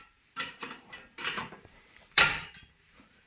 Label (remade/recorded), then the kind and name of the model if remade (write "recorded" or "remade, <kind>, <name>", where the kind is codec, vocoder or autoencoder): remade, vocoder, BigVGAN v2